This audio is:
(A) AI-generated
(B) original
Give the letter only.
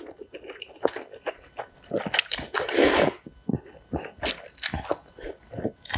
B